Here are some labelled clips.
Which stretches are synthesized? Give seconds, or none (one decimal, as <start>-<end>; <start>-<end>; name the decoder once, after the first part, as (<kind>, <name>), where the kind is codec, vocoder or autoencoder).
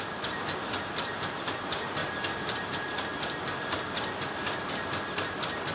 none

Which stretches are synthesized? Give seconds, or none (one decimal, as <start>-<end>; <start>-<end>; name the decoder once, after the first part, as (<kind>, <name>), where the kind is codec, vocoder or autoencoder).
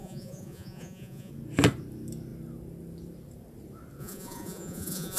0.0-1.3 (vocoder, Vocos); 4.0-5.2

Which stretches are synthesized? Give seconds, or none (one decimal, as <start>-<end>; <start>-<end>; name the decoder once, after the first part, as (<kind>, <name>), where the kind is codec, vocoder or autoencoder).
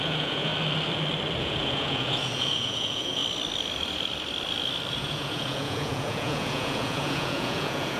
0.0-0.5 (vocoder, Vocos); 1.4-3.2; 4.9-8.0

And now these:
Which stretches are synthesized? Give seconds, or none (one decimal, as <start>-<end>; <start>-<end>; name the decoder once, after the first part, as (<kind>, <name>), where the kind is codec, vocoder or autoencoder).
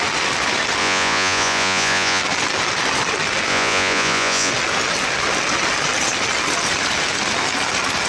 0.8-2.2 (vocoder, Vocos); 3.5-4.5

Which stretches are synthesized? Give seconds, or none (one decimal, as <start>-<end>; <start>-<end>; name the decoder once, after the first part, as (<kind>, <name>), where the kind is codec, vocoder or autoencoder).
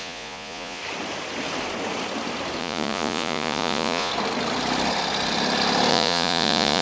0.0-0.8 (vocoder, Vocos); 2.6-4.1; 5.9-6.8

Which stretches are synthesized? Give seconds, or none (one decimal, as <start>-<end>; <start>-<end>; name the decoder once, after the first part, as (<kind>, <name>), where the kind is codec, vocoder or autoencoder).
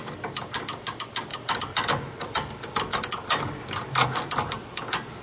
none